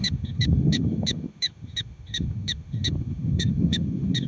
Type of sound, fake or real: fake